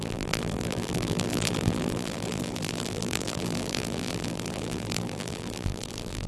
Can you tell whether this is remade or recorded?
remade